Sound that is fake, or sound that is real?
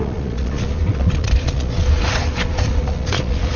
fake